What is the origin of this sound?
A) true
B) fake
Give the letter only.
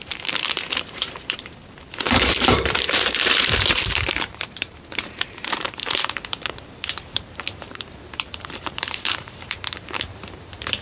B